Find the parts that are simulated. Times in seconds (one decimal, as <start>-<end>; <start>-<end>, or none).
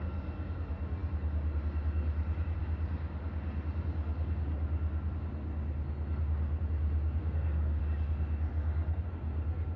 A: 7.2-7.8; 8.5-9.0